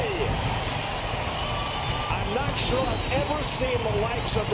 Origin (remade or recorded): recorded